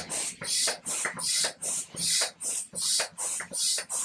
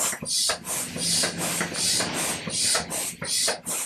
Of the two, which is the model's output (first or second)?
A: first